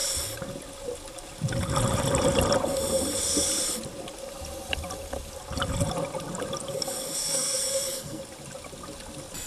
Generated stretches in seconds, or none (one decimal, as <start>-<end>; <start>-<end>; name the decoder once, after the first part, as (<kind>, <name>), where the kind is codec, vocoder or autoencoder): 7.2-8.2 (codec, SNAC)